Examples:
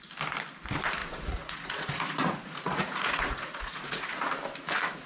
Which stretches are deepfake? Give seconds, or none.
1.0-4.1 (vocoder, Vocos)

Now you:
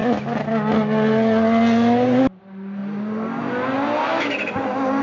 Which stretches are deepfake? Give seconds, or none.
none